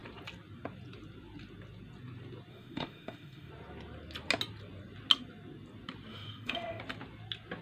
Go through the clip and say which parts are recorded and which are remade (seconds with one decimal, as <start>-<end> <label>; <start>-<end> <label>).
0.0-2.5 recorded; 2.5-3.5 remade; 3.5-6.1 recorded; 6.1-6.8 remade; 6.8-7.6 recorded